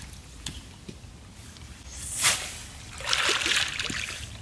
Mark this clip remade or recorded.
recorded